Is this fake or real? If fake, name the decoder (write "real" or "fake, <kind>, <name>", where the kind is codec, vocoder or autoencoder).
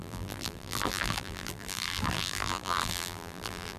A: fake, vocoder, BigVGAN v2